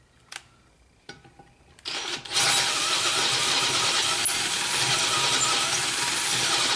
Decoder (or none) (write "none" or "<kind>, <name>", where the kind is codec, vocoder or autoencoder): none